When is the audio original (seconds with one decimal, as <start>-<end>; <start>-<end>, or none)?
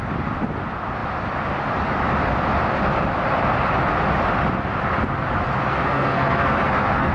0.0-5.7